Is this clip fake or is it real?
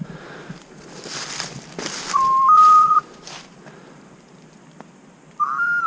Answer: fake